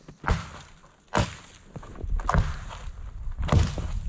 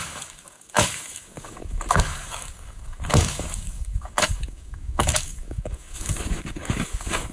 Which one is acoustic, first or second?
first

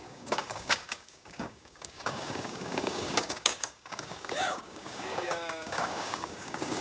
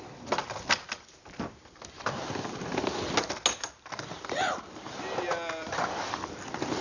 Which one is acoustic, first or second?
second